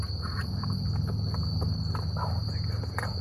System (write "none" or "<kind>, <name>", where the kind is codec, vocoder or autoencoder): none